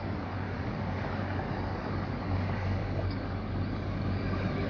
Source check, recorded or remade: remade